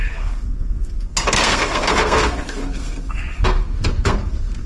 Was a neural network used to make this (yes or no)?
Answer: yes